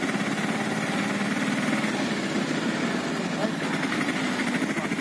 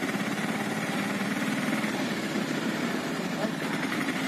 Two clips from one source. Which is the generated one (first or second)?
second